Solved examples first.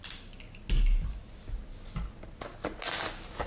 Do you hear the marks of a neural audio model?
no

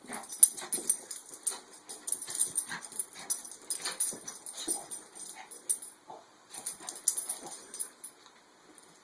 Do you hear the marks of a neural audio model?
no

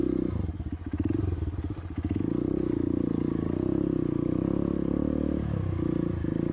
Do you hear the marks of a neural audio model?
no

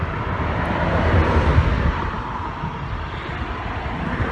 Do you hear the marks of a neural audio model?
no